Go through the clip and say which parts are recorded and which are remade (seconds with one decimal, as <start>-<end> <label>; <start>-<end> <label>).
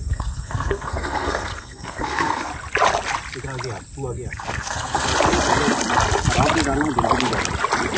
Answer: 0.0-2.5 remade; 2.5-4.3 recorded; 4.3-5.1 remade; 5.1-8.0 recorded